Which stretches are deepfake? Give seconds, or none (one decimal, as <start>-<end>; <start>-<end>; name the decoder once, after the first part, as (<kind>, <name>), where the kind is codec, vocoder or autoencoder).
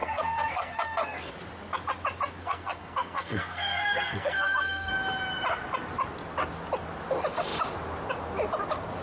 0.0-1.3 (codec, SNAC); 2.4-4.9